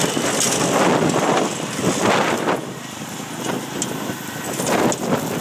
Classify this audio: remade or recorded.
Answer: recorded